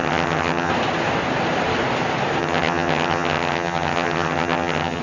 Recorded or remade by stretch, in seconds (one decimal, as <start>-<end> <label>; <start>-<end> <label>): 0.0-0.7 remade; 0.7-2.4 recorded; 2.4-5.0 remade